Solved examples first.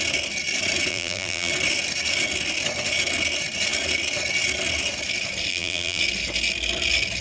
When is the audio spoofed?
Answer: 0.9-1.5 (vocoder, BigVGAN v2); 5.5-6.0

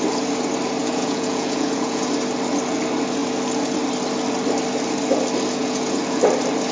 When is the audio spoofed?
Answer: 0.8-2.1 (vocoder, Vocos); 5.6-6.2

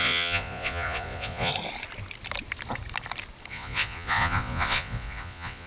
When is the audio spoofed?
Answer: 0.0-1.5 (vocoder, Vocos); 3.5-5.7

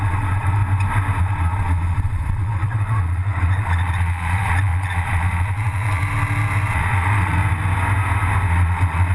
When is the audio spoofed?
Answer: 0.0-0.6 (vocoder, Vocos); 1.2-6.0; 6.7-7.4; 8.5-9.1